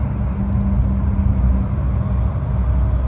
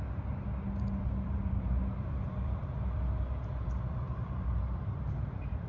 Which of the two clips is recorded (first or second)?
first